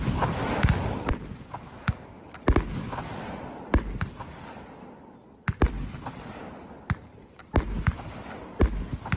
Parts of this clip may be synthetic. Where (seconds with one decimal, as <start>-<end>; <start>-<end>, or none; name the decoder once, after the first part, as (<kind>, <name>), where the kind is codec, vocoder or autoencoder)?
none